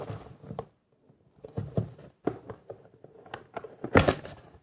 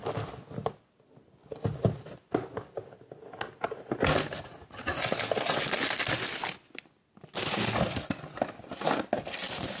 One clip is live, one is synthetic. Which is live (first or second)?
second